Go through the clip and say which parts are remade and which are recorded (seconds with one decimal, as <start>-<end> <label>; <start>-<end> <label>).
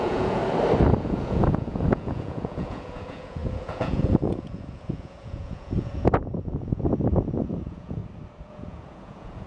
0.0-0.4 remade; 0.4-1.0 recorded; 1.0-8.0 remade; 8.0-8.5 recorded; 8.5-9.5 remade